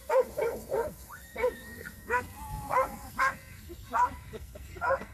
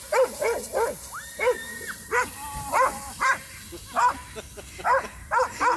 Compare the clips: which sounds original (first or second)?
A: second